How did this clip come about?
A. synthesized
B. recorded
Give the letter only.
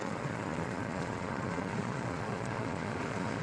A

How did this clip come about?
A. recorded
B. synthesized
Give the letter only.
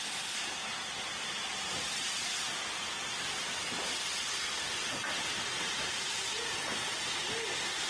A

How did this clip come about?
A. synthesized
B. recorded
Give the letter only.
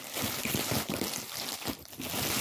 B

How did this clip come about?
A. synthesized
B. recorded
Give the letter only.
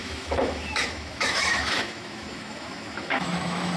A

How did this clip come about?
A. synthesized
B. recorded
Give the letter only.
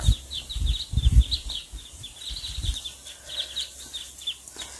B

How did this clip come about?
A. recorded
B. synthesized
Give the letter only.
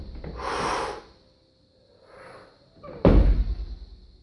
A